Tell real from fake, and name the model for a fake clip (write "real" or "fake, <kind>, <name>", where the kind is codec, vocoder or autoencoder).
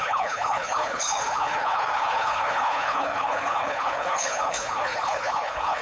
fake, codec, HILCodec